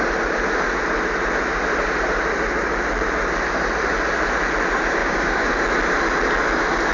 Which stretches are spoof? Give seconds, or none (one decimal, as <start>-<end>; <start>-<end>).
5.0-5.5